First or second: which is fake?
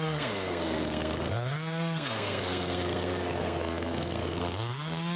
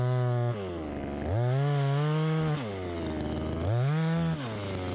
first